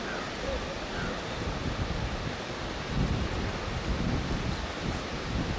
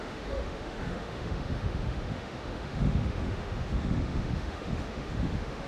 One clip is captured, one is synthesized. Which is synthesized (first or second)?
second